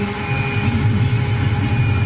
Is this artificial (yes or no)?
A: no